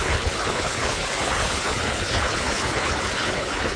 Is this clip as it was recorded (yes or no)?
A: no